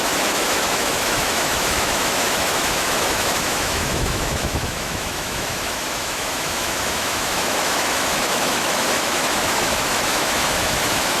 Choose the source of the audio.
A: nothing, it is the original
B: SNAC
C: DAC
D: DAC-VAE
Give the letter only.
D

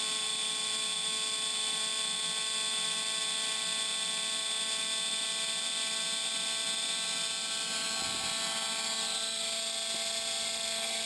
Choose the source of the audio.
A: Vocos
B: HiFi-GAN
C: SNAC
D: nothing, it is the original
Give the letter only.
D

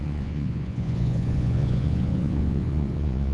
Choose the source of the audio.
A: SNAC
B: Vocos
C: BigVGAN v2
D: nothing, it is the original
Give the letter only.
B